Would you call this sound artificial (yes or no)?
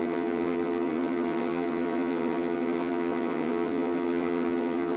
yes